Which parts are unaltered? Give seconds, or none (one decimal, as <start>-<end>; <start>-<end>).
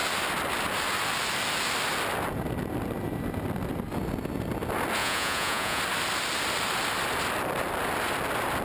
0.0-5.0; 5.8-8.6